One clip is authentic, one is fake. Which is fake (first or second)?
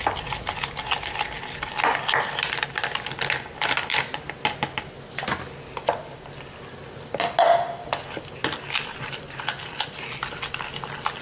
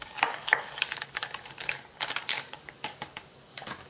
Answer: second